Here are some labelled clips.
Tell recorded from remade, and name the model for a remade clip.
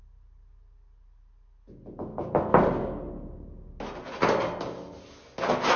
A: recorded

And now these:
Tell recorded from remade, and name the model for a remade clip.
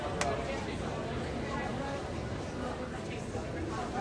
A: recorded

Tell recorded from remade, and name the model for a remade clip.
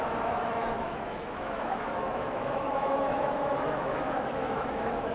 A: remade, autoencoder, DAC-VAE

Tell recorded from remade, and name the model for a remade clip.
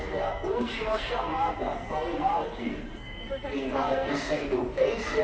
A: remade, codec, SNAC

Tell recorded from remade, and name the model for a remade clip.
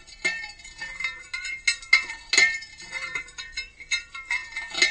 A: recorded